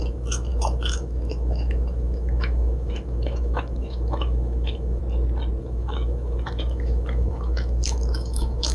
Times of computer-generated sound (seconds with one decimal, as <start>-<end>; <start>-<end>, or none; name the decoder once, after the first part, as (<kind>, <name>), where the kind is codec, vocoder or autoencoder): 0.0-5.0 (autoencoder, DAC-VAE); 5.6-8.7